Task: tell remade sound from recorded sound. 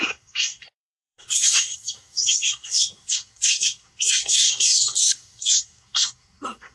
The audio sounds remade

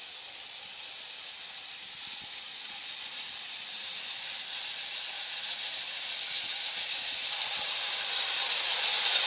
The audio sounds recorded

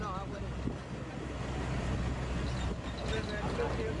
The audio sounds recorded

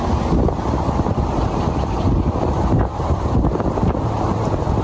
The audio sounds recorded